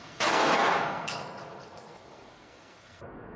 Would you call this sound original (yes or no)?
no